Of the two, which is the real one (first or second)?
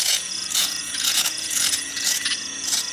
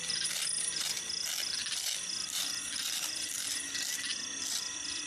second